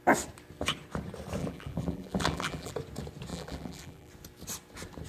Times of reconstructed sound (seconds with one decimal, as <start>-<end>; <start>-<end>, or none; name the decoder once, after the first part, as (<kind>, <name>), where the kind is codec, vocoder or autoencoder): 1.4-2.7 (vocoder, BigVGAN v2); 3.3-4.1